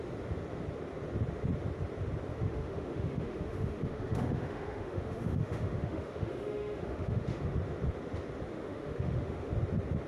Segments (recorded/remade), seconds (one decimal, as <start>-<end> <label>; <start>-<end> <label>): 0.0-2.3 recorded; 2.3-7.4 remade; 7.4-8.5 recorded; 8.5-9.5 remade; 9.5-10.1 recorded